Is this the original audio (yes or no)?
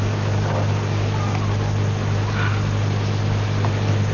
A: yes